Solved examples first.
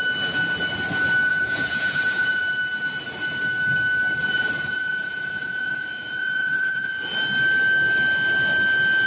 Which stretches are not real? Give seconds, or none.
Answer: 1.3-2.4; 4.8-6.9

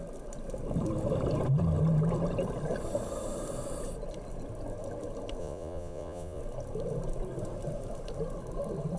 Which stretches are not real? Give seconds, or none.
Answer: 5.4-6.4

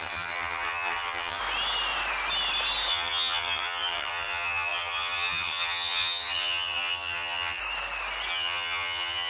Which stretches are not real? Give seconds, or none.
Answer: 0.0-1.4; 2.9-7.6; 8.3-9.3

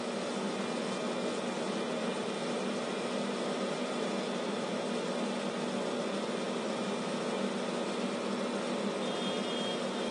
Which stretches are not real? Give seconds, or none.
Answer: 2.0-4.8

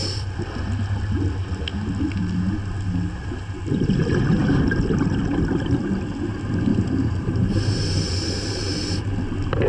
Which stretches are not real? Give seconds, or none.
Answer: 6.7-8.5

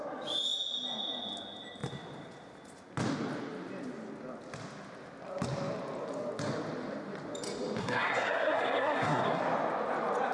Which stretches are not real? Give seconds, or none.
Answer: 7.8-9.4